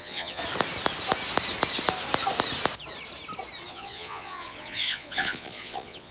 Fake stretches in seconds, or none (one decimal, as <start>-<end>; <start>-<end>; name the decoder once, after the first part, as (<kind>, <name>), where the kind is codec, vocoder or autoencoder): 0.0-0.4 (vocoder, Vocos); 3.7-6.1